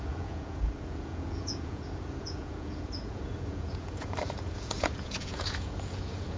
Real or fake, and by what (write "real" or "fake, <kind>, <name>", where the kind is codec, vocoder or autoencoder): fake, vocoder, Vocos